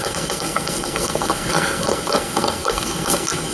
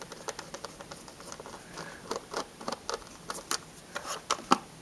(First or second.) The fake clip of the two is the first